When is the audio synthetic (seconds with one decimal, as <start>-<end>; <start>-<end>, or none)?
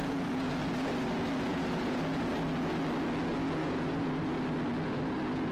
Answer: 0.0-0.5; 1.5-2.0; 3.6-4.1